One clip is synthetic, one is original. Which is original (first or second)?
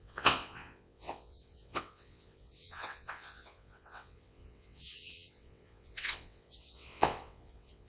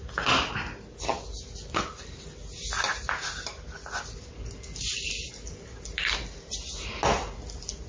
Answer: second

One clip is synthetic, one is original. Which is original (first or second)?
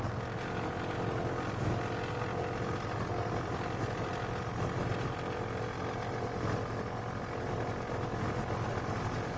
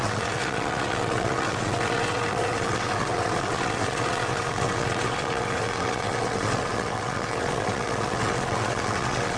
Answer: first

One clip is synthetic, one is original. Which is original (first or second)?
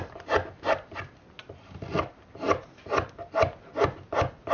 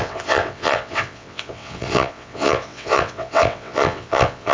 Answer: first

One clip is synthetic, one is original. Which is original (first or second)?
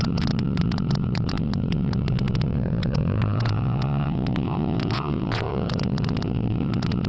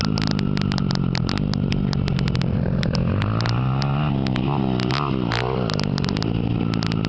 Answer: second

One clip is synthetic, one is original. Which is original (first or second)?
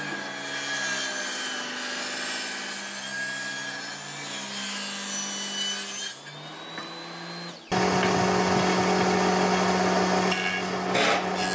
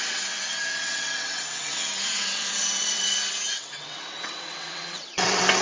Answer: first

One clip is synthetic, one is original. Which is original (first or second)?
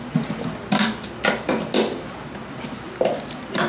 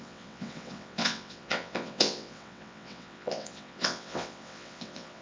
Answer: first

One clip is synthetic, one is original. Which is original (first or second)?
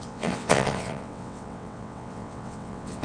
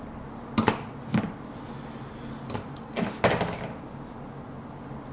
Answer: second